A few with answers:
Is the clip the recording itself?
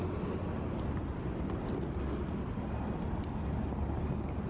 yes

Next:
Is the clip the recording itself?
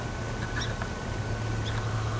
yes